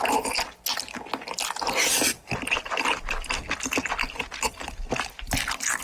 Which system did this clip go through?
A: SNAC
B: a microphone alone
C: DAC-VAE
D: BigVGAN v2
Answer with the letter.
B